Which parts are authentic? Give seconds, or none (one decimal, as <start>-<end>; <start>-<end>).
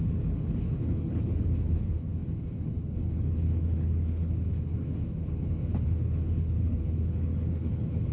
none